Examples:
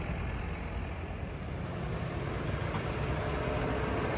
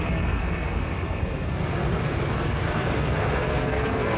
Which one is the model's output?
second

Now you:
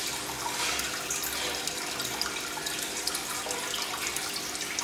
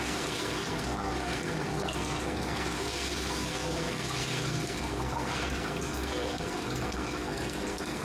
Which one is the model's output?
second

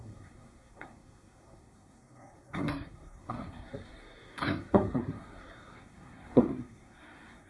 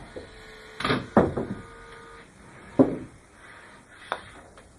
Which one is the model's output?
first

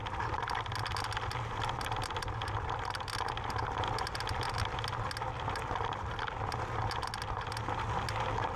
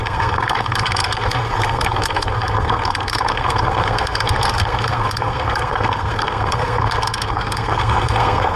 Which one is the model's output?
second